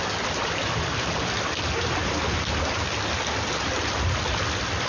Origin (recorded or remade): recorded